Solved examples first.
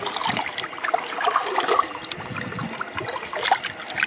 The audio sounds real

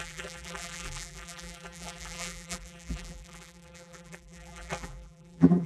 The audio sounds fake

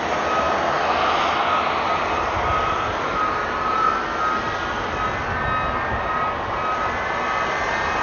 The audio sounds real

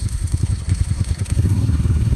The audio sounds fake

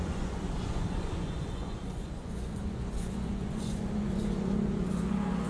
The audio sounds fake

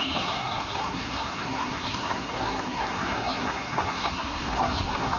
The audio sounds fake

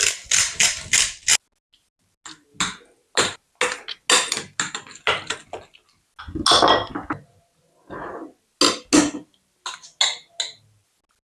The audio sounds real